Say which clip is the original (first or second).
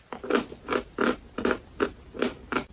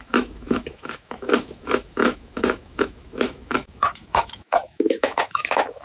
first